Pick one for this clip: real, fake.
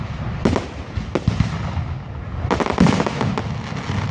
real